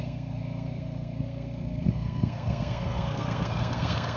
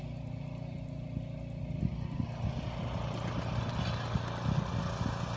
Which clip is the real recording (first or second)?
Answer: second